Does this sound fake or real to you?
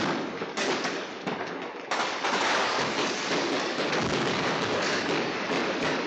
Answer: fake